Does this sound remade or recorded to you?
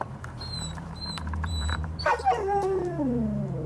remade